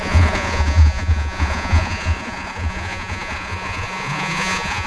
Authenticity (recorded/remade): remade